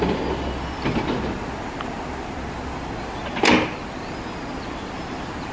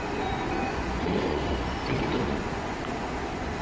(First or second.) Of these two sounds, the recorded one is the first